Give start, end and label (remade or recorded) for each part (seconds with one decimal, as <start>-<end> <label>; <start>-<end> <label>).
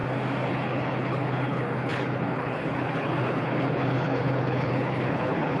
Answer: 0.0-0.5 recorded; 0.5-5.6 remade